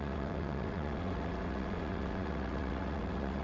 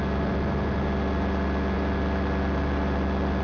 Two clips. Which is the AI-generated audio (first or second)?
first